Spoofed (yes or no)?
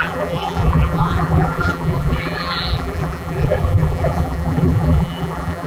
yes